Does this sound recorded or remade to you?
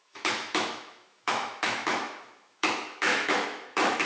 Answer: remade